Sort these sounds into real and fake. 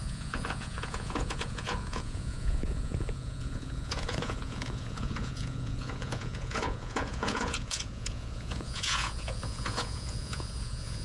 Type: fake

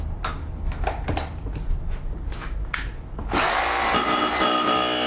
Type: real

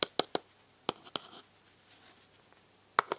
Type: real